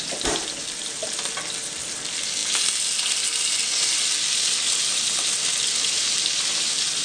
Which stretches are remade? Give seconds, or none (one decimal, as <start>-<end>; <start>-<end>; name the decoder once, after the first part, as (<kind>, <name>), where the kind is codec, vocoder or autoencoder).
0.0-1.0 (vocoder, BigVGAN v2); 1.8-2.4; 5.6-7.0